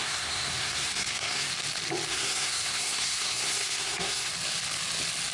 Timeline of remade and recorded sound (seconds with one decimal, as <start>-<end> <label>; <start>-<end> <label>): 0.0-1.5 remade; 1.5-2.1 recorded; 2.1-4.3 remade; 4.3-5.3 recorded